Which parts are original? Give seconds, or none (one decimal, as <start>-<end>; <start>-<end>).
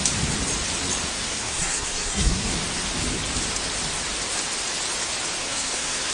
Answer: 0.0-1.1; 2.5-5.4